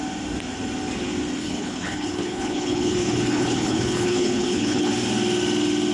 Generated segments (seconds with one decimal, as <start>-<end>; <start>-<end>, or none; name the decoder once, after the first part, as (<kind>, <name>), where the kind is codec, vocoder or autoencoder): 1.4-4.9 (codec, HILCodec)